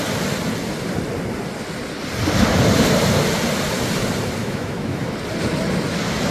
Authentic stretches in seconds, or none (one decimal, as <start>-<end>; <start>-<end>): 0.0-4.4; 5.0-6.3